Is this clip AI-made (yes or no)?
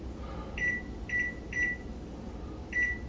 no